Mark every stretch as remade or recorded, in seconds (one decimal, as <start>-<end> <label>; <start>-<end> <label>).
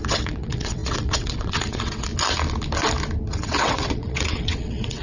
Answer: 0.0-2.1 remade; 2.1-3.3 recorded; 3.3-5.0 remade